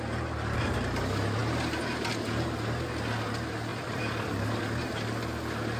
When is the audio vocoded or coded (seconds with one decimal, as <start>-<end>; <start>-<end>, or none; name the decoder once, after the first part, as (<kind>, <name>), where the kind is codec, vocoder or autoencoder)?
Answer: 3.7-4.6 (vocoder, BigVGAN v2)